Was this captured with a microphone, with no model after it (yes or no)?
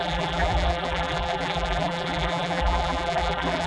no